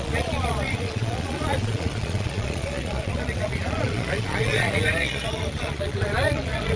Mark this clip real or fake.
fake